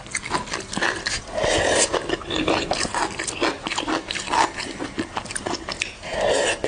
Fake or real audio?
real